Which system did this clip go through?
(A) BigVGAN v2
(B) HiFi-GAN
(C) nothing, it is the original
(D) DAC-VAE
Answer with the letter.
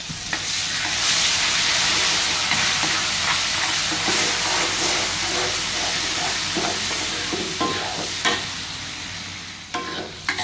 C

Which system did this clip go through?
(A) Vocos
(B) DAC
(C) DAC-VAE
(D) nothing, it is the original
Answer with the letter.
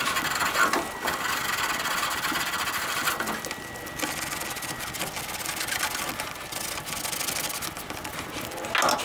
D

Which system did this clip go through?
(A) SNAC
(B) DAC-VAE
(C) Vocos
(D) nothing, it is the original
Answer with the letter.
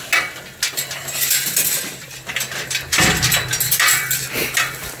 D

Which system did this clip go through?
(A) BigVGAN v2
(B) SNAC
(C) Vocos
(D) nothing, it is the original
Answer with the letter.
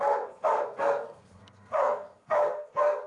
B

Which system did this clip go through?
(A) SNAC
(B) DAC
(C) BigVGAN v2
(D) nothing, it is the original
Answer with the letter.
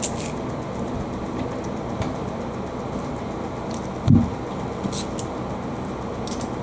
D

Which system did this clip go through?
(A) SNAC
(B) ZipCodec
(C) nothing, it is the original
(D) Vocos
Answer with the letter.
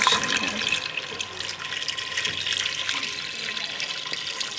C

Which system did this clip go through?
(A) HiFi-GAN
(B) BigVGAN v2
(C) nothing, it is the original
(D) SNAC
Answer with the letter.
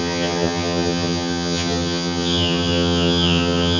A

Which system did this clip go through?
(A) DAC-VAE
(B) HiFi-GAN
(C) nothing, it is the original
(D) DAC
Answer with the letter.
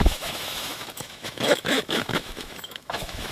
A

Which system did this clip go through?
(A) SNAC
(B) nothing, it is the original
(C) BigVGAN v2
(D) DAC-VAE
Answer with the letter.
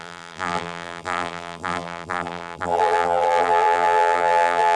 C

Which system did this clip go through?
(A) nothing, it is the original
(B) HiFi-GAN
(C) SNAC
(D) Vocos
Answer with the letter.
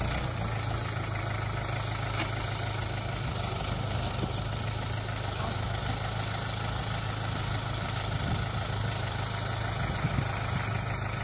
A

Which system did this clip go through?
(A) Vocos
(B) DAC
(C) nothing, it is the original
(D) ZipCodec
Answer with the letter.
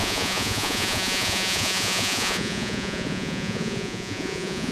A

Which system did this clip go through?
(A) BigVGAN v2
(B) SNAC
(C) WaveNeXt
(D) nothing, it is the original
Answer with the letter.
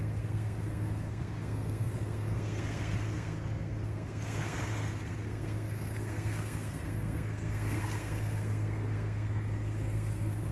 B